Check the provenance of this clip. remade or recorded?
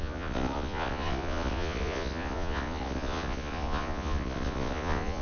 remade